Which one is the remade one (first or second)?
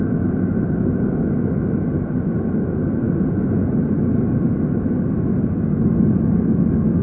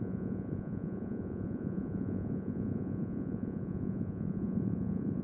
second